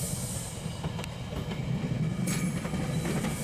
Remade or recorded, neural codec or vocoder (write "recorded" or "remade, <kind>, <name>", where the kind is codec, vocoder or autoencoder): recorded